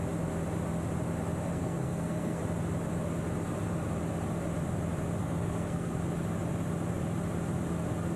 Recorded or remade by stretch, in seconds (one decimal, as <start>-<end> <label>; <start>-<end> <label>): 0.0-1.5 recorded; 1.5-2.4 remade; 2.4-5.2 recorded; 5.2-5.9 remade; 5.9-8.2 recorded

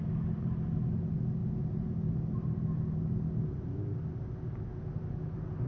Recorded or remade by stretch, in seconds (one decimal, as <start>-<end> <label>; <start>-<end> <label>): 0.0-5.7 recorded

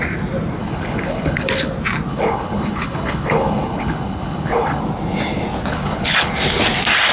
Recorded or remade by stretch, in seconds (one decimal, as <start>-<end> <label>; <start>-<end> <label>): 0.0-0.6 recorded; 0.6-1.7 remade; 1.7-2.1 recorded; 2.1-4.8 remade; 4.8-5.7 recorded; 5.7-6.3 remade; 6.3-7.1 recorded

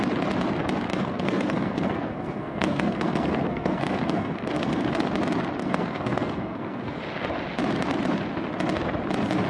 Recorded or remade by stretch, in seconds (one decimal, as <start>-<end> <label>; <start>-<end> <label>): 0.0-0.9 recorded; 0.9-5.1 remade; 5.1-5.6 recorded; 5.6-7.0 remade; 7.0-9.5 recorded

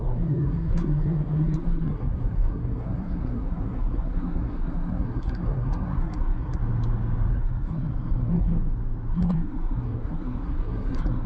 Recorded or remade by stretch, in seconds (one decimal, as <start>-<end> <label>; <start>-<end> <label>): 0.0-6.6 remade; 6.6-7.3 recorded; 7.3-8.5 remade; 8.5-9.1 recorded; 9.1-11.3 remade